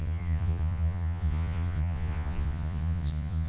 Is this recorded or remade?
remade